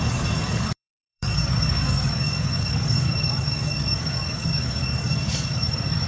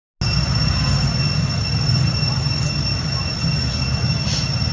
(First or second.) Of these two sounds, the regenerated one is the first